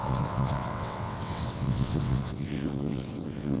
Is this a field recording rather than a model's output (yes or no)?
no